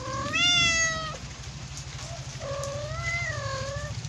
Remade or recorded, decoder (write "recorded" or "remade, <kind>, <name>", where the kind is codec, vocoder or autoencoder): recorded